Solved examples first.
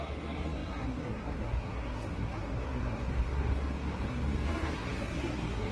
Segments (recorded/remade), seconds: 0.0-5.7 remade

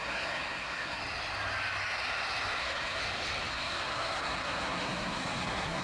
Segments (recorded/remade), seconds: 0.0-1.0 remade; 1.0-2.6 recorded; 2.6-3.0 remade; 3.0-3.5 recorded; 3.5-5.8 remade

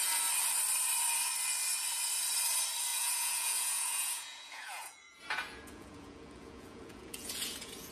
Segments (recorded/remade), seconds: 0.0-2.9 recorded; 2.9-7.9 remade

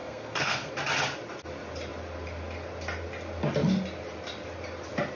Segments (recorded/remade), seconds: 0.0-0.7 remade; 0.7-5.2 recorded

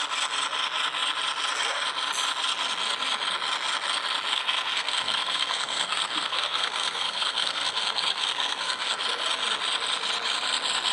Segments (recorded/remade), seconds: 0.0-4.3 recorded; 4.3-9.0 remade; 9.0-10.9 recorded